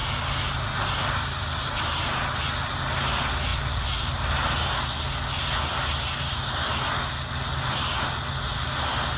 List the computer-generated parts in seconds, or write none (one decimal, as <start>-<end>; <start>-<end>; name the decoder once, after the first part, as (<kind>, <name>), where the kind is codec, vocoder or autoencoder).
none

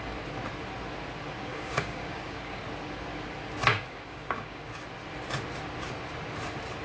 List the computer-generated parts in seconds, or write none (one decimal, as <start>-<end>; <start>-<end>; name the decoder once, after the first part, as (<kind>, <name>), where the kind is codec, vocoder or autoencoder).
1.4-2.6 (codec, DAC); 3.7-4.7

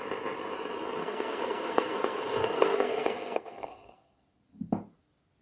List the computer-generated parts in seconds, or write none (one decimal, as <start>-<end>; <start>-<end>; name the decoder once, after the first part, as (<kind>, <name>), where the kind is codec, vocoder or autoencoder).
1.0-4.2 (codec, SNAC)

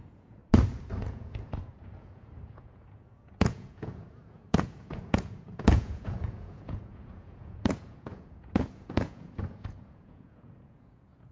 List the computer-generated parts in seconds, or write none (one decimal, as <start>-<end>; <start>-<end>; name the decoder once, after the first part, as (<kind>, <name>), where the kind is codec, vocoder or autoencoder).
0.0-0.4 (vocoder, Vocos); 1.0-11.3

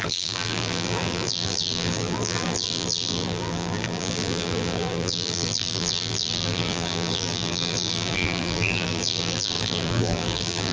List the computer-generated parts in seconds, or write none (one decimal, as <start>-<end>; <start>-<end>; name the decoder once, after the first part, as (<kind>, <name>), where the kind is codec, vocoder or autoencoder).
0.0-10.7 (vocoder, BigVGAN v2)

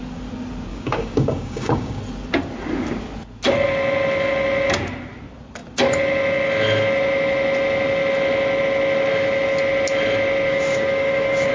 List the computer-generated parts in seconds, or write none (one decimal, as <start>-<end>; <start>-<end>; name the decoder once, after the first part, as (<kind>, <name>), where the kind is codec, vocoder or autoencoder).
0.7-2.0 (codec, DAC); 10.5-11.5

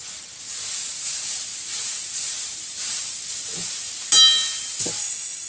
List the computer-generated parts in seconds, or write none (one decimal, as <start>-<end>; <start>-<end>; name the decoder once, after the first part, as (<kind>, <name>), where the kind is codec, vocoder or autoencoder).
5.0-5.5 (codec, DAC)